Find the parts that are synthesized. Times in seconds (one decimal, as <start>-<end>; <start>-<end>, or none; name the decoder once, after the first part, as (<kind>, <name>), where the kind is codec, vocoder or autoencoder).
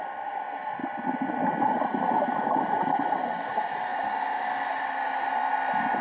none